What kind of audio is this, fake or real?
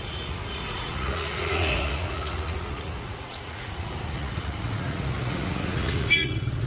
fake